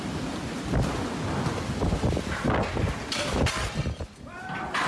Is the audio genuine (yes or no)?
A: yes